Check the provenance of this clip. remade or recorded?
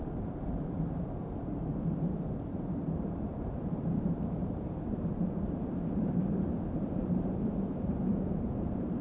remade